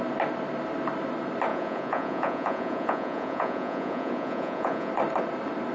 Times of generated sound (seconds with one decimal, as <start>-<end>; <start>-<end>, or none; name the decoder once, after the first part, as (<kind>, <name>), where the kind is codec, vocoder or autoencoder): 1.5-4.9 (vocoder, Vocos)